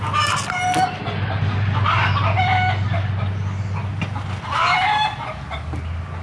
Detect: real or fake real